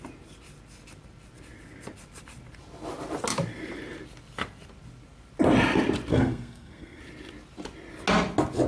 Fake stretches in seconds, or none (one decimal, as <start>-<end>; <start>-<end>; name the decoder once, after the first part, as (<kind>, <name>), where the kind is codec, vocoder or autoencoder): 6.1-7.0 (codec, SNAC)